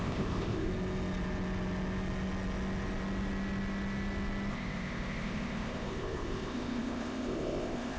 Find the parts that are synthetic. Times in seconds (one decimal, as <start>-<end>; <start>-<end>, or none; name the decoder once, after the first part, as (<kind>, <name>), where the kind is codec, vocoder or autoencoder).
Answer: 0.0-0.7 (codec, ZipCodec); 4.5-8.0